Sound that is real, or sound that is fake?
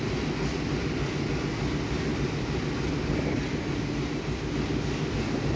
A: real